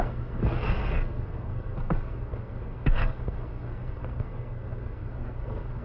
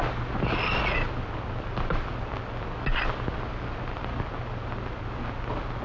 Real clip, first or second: second